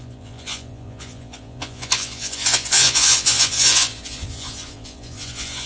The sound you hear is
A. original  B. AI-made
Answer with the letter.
B